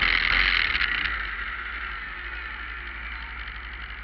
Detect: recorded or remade recorded